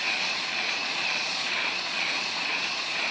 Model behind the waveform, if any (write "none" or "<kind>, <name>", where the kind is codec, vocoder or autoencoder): vocoder, Vocos